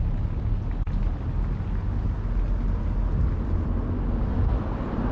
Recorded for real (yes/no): yes